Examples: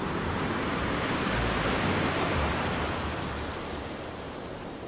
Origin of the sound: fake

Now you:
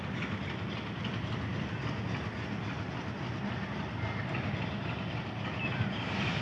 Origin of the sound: real